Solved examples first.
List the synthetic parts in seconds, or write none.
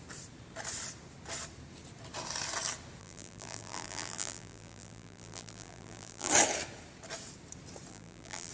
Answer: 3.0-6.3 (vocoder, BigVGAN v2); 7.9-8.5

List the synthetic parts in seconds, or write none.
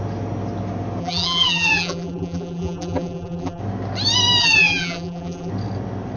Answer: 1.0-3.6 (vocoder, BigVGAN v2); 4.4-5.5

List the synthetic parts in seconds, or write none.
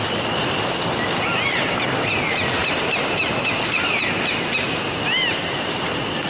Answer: 2.6-5.7 (vocoder, BigVGAN v2)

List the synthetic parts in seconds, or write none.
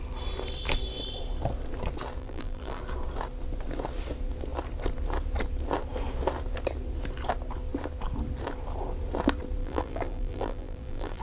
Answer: 2.2-2.8 (vocoder, BigVGAN v2); 9.6-11.2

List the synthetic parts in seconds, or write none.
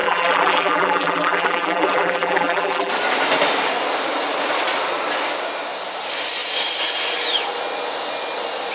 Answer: 0.0-2.9 (vocoder, BigVGAN v2)